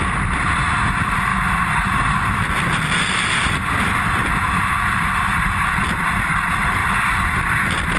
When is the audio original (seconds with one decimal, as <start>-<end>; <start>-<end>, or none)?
0.0-6.8; 7.5-8.0